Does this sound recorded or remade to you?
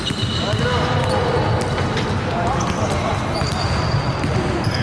recorded